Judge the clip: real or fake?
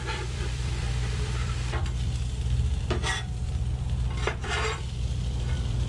fake